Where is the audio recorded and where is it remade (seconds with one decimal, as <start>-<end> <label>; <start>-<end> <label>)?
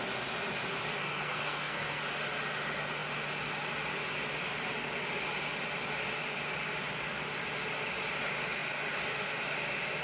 0.0-1.0 recorded; 1.0-2.0 remade; 2.0-10.0 recorded